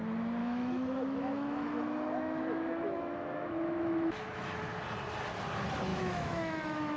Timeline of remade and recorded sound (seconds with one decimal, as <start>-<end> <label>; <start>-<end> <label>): 0.0-0.4 recorded; 0.4-4.6 remade; 4.6-5.9 recorded; 5.9-7.0 remade